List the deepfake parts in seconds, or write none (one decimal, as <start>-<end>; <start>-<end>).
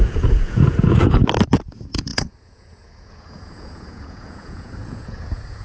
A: 0.0-1.2; 1.7-5.6